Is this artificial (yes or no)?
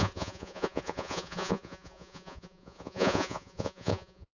yes